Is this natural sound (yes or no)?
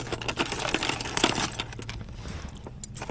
yes